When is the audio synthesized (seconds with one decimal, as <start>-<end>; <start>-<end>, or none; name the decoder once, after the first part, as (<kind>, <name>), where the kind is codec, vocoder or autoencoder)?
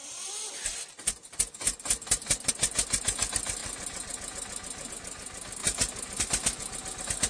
0.0-2.5 (vocoder, BigVGAN v2)